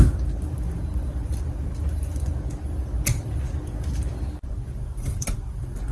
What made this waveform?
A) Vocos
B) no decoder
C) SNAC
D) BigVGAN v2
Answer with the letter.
B